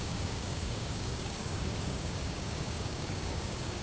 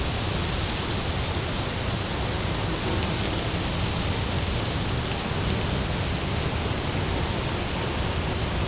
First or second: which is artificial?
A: first